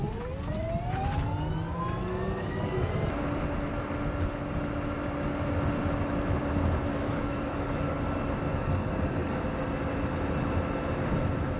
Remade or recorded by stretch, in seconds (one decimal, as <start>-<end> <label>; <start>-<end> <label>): 0.0-2.0 recorded; 2.0-2.7 remade; 2.7-6.9 recorded; 6.9-8.0 remade; 8.0-8.5 recorded; 8.5-9.4 remade; 9.4-11.6 recorded